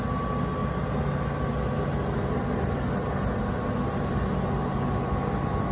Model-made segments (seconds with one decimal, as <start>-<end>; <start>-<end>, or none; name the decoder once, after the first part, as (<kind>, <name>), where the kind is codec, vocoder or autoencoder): none